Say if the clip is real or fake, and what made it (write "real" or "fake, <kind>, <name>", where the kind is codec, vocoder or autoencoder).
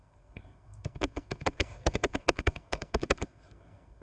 fake, codec, SNAC